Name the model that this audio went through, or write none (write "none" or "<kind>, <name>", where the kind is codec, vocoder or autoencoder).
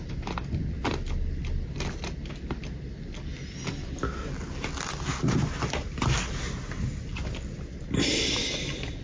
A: none